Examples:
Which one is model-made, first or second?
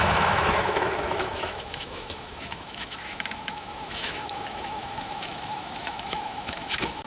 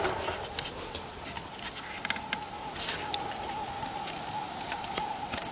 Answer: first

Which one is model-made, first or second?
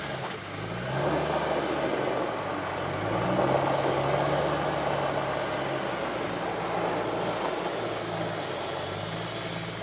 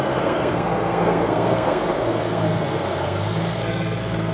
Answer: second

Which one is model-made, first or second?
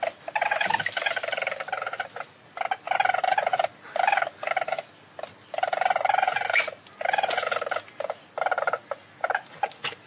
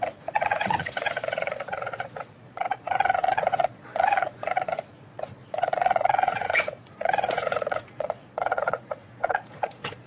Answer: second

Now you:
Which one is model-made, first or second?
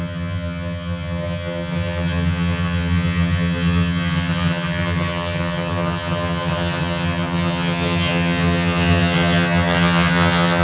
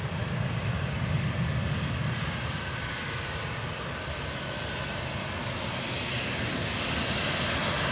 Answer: first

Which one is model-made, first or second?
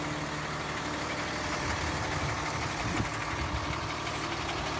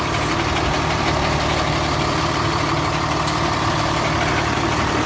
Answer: second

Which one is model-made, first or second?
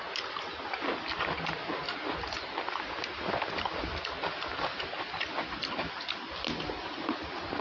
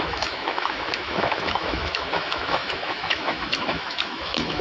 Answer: second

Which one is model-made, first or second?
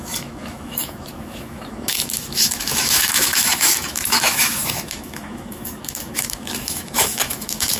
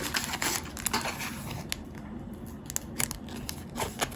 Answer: first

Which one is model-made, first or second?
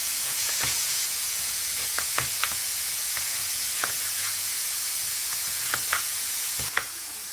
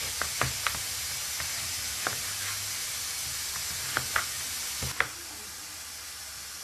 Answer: first